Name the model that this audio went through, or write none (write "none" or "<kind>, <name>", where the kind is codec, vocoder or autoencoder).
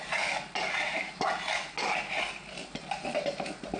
none